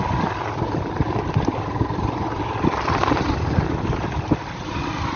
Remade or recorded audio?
remade